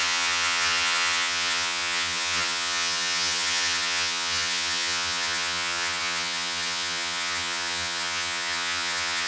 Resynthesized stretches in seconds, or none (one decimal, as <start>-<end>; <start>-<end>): 0.0-9.3